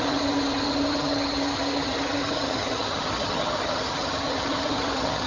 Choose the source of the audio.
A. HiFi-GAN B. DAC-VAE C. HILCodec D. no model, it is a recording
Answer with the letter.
A